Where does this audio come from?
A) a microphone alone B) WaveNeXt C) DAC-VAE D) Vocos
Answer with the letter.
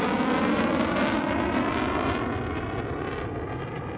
A